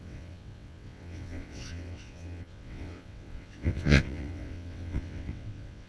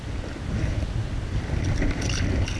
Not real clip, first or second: first